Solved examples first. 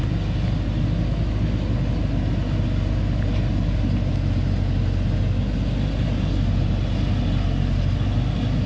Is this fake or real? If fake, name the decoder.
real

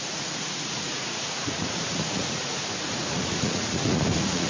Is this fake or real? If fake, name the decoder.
fake, vocoder, Vocos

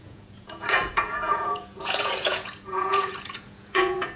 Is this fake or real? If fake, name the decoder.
fake, vocoder, Vocos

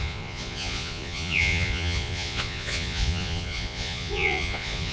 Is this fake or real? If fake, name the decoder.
fake, vocoder, Vocos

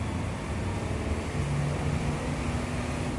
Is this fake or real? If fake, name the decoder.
real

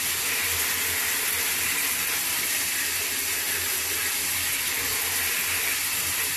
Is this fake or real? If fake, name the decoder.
real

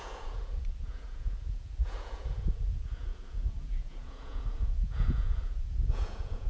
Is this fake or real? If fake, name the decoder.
fake, vocoder, Vocos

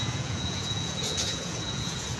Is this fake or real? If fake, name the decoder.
fake, vocoder, Vocos